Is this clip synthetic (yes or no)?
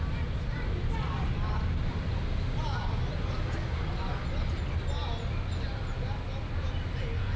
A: no